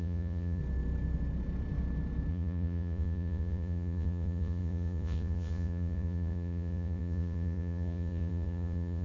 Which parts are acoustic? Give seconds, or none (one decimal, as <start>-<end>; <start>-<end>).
0.6-2.3